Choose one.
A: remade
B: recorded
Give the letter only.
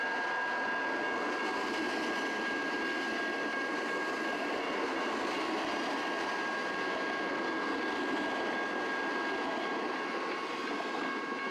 B